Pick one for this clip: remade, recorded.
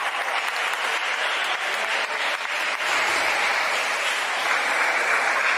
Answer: remade